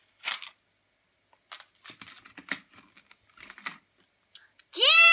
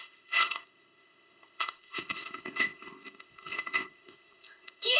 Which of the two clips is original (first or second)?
first